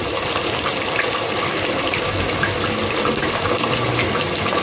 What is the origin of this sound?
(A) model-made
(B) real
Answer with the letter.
B